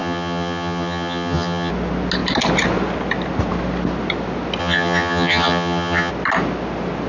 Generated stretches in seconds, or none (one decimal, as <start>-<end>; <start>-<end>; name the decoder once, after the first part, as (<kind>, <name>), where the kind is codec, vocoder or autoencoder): 0.0-1.7 (vocoder, HiFi-GAN); 4.6-6.1